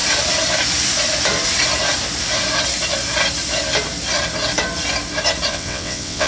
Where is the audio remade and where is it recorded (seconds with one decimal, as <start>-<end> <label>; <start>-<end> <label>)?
0.0-5.5 recorded; 5.5-6.3 remade